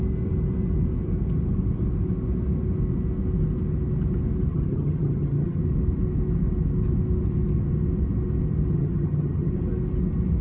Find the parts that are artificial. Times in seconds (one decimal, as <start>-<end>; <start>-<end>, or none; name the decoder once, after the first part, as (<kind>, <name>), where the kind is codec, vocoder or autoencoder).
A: 4.5-5.6 (vocoder, HiFi-GAN); 8.7-9.5

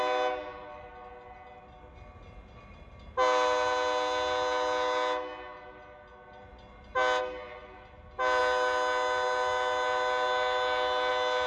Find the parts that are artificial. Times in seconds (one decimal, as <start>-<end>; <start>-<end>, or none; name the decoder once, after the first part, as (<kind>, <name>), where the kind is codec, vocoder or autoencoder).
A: none